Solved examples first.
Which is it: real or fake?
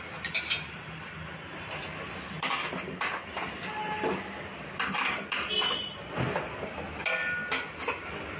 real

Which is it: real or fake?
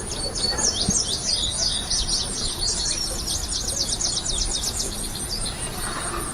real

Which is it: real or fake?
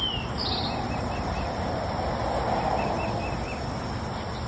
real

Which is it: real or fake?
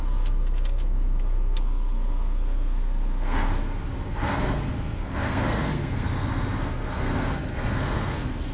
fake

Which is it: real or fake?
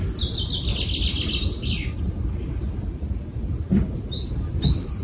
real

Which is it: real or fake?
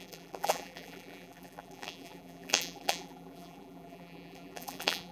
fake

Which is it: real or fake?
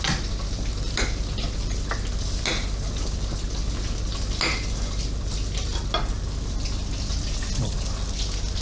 real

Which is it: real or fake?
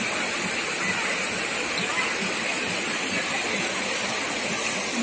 real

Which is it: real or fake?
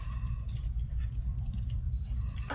real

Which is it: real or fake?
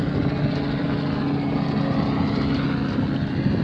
real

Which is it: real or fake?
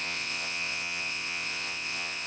fake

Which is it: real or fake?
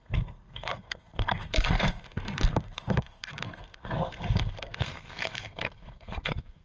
fake